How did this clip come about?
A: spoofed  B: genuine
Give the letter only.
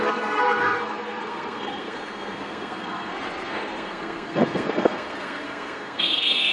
A